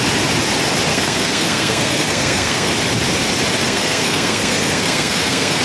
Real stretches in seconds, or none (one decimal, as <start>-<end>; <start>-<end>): 0.0-0.9; 2.7-3.6